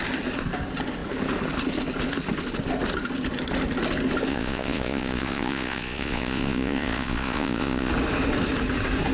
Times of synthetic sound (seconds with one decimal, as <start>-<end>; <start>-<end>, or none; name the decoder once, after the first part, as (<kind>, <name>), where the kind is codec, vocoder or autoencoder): 4.3-7.9 (vocoder, Vocos)